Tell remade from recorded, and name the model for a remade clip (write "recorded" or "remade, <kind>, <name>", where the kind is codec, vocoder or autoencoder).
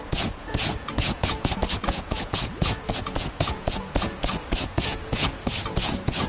remade, vocoder, Vocos